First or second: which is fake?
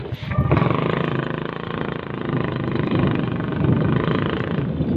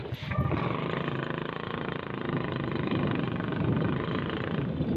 second